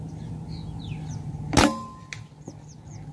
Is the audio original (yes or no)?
yes